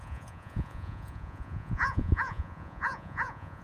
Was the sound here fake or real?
fake